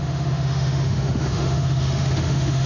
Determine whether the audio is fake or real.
fake